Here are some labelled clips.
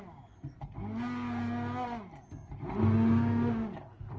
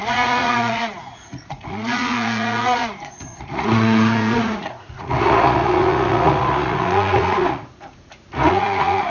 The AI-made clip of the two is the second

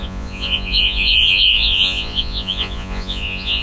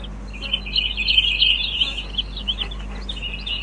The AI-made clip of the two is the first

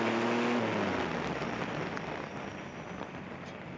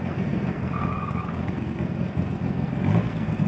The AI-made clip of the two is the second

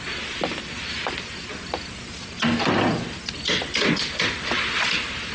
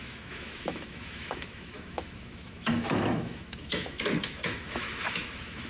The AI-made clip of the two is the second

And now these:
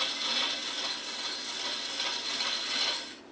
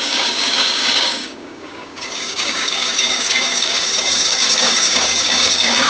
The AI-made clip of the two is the second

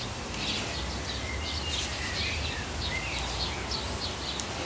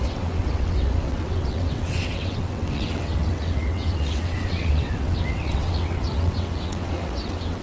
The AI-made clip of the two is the second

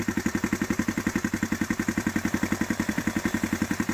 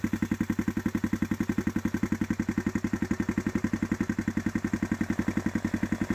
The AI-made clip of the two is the first